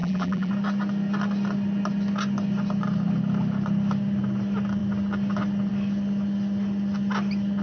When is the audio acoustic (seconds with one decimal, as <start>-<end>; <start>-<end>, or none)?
0.5-7.6